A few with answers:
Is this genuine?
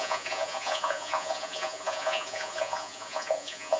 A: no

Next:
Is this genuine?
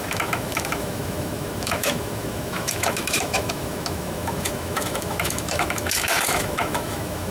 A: no